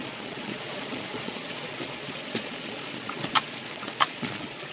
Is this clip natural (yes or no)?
no